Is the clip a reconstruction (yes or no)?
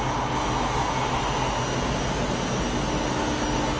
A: no